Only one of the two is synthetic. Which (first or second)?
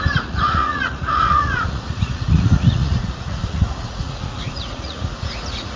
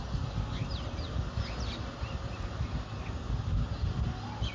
first